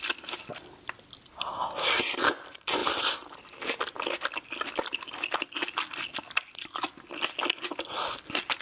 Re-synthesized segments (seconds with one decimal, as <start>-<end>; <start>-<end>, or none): none